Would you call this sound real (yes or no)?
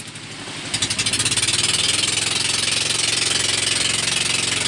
yes